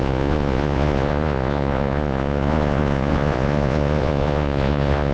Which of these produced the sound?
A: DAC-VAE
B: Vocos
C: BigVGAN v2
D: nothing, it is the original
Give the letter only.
B